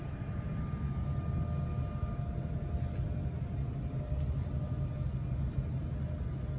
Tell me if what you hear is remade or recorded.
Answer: recorded